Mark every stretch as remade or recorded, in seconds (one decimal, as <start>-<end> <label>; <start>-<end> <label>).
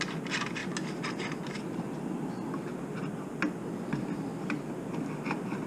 0.0-5.7 recorded